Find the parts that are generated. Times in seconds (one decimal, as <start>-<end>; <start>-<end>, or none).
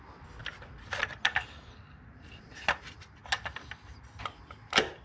none